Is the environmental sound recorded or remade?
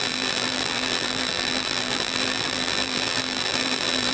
remade